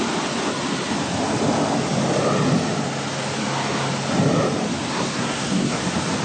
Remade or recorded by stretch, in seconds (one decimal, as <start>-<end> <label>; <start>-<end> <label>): 0.0-4.9 recorded; 4.9-5.8 remade; 5.8-6.2 recorded